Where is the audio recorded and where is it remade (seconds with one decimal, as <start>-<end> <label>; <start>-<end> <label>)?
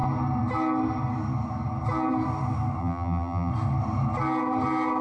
0.0-2.8 recorded; 2.8-3.5 remade; 3.5-5.0 recorded